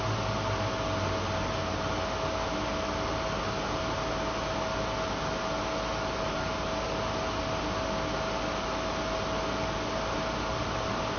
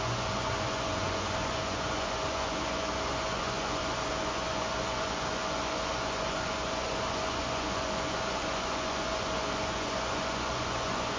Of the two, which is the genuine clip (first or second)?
first